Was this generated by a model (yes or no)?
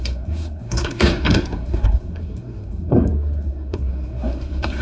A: yes